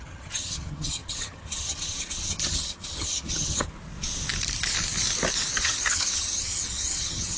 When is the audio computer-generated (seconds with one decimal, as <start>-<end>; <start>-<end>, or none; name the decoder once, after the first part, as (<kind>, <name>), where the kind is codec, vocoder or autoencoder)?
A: 0.0-3.7 (vocoder, HiFi-GAN); 5.5-7.4